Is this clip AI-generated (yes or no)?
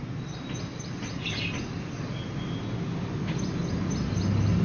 no